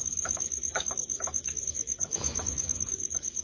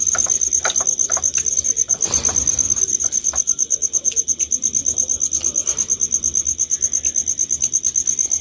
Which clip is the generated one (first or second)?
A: first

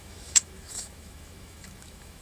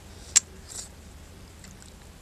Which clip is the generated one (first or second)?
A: first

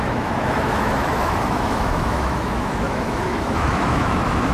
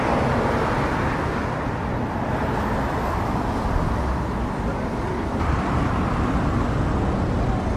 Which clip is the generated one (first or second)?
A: first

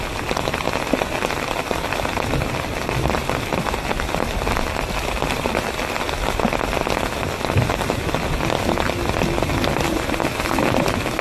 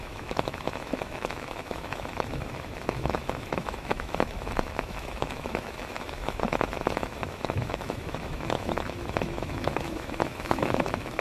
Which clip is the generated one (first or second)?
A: second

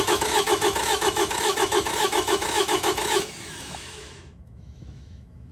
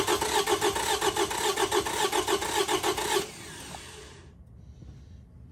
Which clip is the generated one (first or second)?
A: first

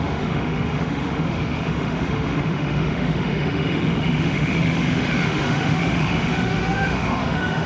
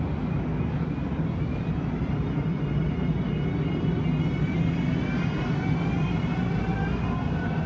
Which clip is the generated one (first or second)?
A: first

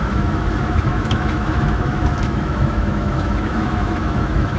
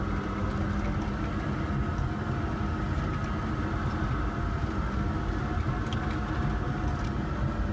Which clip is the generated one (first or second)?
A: first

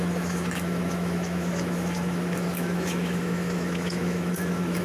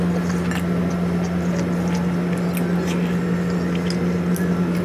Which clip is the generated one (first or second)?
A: first